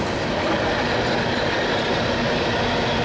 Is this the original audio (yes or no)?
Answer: yes